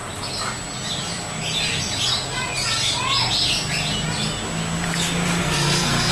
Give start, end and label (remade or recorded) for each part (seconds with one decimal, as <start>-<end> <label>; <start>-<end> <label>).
0.0-5.4 recorded; 5.4-6.1 remade